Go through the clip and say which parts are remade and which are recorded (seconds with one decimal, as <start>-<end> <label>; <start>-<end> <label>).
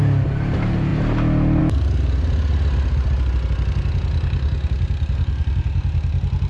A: 0.0-6.5 recorded